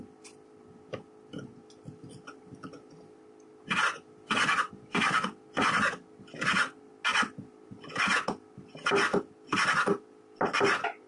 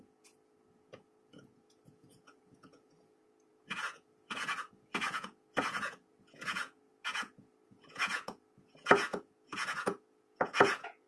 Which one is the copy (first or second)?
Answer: second